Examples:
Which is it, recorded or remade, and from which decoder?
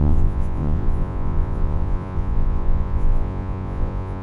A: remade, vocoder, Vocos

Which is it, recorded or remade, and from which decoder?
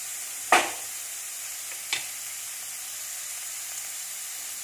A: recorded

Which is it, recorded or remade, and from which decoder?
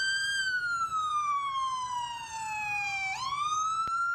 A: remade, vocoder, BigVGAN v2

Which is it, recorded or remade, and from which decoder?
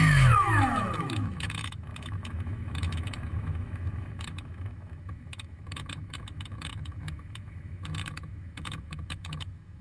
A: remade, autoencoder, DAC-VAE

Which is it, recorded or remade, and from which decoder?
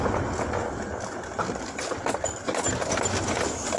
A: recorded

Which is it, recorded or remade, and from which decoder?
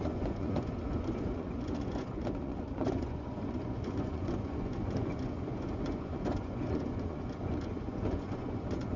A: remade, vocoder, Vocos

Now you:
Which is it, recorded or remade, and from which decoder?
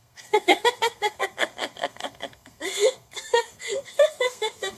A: remade, codec, SNAC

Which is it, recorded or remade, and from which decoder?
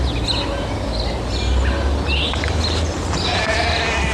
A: recorded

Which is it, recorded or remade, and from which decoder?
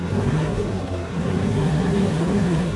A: remade, codec, SNAC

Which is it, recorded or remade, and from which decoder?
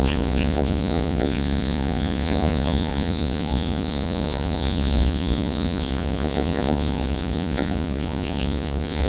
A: remade, vocoder, Vocos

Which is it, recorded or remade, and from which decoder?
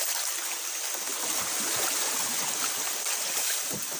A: recorded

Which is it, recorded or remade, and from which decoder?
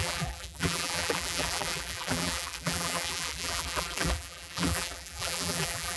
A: remade, vocoder, BigVGAN v2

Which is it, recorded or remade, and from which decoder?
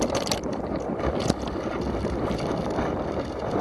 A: remade, vocoder, BigVGAN v2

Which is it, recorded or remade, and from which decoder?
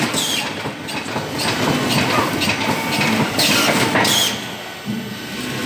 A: recorded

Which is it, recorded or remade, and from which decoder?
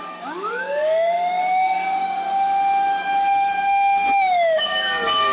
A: remade, codec, DAC